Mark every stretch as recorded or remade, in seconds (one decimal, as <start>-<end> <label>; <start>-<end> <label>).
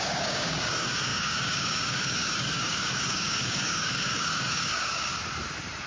0.0-5.1 remade; 5.1-5.9 recorded